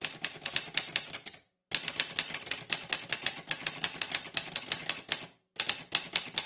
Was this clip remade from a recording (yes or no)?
no